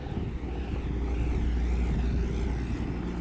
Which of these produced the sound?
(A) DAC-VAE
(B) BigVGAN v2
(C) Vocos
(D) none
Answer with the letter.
D